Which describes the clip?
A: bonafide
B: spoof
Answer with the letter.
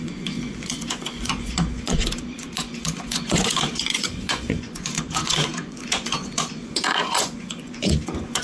B